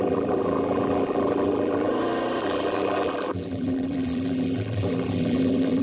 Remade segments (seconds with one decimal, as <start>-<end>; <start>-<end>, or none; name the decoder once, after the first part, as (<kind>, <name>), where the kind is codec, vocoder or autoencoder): 0.0-1.9 (vocoder, BigVGAN v2); 2.4-5.8